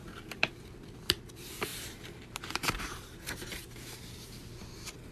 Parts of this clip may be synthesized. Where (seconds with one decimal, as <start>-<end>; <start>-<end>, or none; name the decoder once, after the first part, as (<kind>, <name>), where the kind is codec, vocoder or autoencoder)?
0.0-0.5 (vocoder, BigVGAN v2); 1.7-3.6